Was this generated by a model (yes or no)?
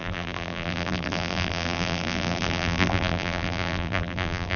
yes